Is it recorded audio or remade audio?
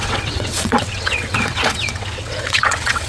remade